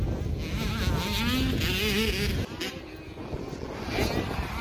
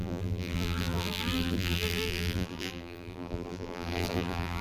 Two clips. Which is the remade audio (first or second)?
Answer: second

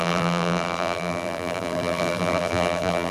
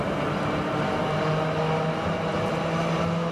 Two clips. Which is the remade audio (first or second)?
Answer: first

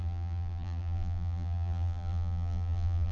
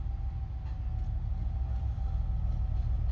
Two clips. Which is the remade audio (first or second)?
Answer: first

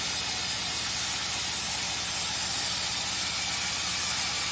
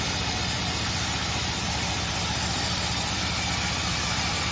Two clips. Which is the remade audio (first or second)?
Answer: second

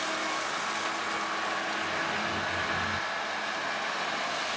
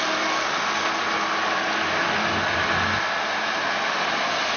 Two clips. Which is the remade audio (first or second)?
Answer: second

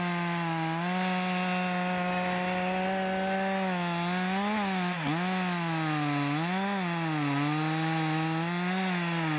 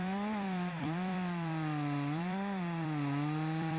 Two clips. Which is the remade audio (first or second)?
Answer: second